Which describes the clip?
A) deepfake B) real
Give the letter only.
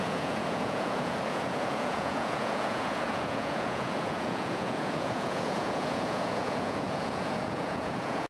A